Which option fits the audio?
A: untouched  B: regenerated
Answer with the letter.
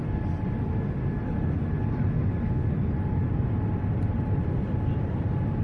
A